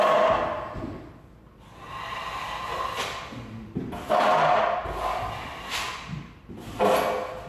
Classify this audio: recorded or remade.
recorded